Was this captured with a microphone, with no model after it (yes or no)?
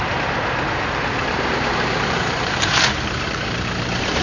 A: no